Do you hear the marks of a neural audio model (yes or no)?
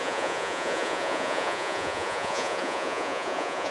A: yes